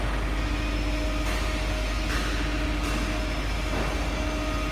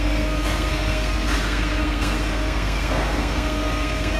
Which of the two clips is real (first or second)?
first